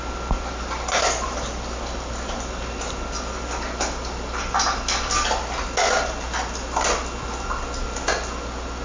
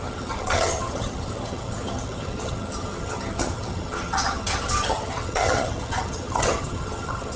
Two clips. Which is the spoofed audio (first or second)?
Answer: second